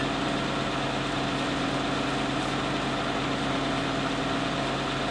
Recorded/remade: recorded